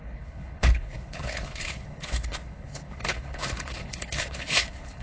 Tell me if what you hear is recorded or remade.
remade